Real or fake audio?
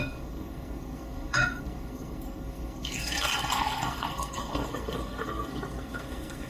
fake